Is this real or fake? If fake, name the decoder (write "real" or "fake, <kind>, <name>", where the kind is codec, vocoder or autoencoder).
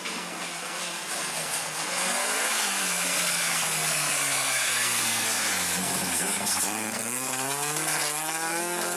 fake, codec, SNAC